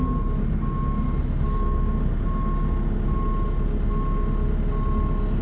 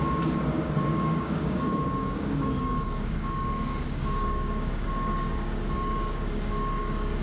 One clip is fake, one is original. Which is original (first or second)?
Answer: first